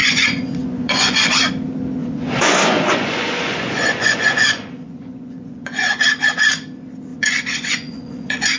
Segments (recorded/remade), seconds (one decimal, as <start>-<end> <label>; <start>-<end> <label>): 0.0-1.5 remade; 1.5-2.0 recorded; 2.0-6.0 remade; 6.0-7.1 recorded; 7.1-8.6 remade